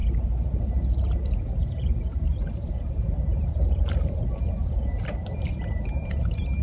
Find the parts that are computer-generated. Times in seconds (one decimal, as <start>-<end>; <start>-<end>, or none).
1.3-6.6